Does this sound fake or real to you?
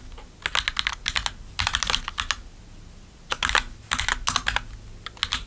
real